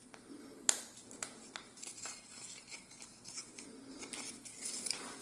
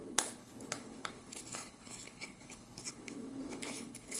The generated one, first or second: second